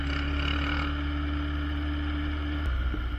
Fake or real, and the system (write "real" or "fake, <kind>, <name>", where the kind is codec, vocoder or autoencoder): real